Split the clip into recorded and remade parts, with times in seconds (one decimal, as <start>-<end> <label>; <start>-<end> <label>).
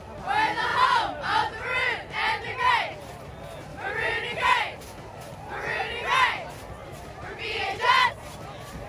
0.0-0.7 recorded; 0.7-2.7 remade; 2.7-3.7 recorded; 3.7-4.5 remade; 4.5-6.8 recorded; 6.8-7.8 remade; 7.8-8.9 recorded